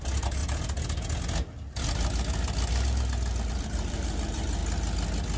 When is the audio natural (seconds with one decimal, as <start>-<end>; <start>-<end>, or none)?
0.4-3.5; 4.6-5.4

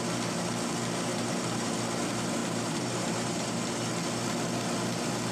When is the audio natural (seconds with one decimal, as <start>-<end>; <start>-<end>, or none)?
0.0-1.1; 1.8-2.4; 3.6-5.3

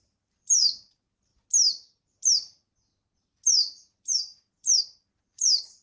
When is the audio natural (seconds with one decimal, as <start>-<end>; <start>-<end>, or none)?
1.3-4.8

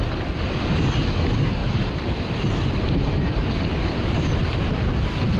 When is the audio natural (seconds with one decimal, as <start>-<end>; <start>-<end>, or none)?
0.0-1.6; 4.7-5.4

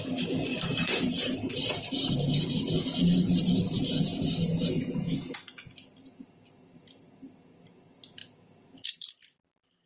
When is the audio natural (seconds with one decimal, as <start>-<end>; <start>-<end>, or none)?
0.0-0.5; 2.1-9.9

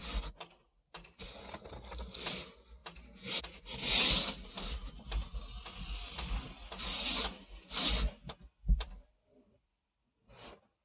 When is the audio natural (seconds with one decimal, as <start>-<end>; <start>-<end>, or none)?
0.0-10.8

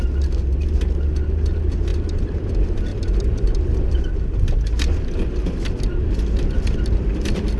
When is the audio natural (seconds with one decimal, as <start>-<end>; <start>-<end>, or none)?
0.0-1.9; 2.5-2.9; 3.9-5.9

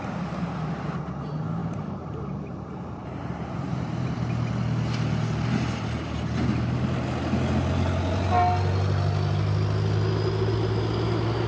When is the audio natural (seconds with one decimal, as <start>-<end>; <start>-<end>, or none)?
0.0-1.6; 4.5-11.5